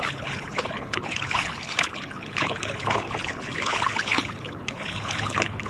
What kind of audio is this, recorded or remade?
remade